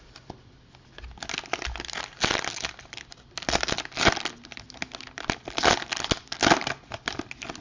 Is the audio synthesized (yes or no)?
no